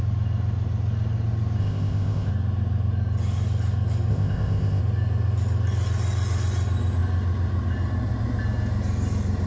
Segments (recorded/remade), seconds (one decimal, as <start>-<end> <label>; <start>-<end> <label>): 0.0-1.6 recorded; 1.6-2.3 remade; 2.3-4.1 recorded; 4.1-4.8 remade; 4.8-9.5 recorded